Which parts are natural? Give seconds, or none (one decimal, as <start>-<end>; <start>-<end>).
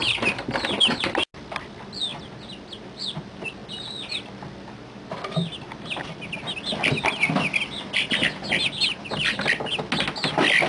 0.0-10.7